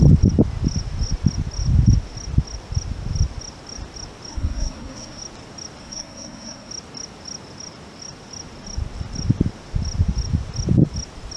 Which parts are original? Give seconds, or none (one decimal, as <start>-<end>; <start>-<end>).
0.0-4.3; 5.2-5.8; 6.7-11.4